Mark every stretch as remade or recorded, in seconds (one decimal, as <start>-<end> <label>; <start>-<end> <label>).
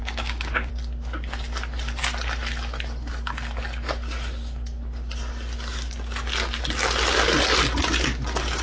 0.0-0.7 remade; 0.7-8.6 recorded